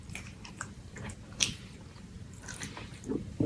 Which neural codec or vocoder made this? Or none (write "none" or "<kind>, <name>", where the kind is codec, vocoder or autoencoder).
vocoder, BigVGAN v2